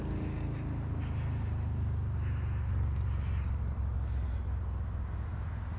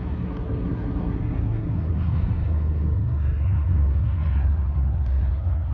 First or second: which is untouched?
first